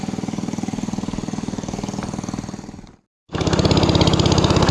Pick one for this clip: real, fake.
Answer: real